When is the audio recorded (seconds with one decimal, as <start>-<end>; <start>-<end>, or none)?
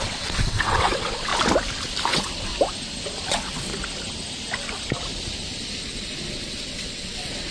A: 1.3-2.1; 2.5-3.3; 3.7-6.3